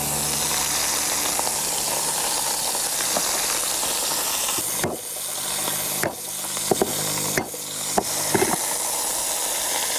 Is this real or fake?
real